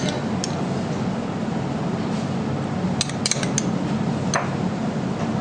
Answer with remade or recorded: recorded